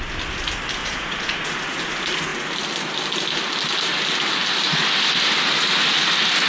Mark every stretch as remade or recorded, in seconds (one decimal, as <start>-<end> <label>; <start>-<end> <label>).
0.0-0.8 recorded; 0.8-1.8 remade; 1.8-6.5 recorded